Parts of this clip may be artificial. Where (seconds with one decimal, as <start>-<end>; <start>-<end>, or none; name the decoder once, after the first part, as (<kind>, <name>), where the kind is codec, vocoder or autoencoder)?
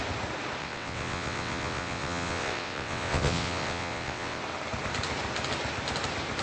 0.6-4.4 (vocoder, WaveNeXt)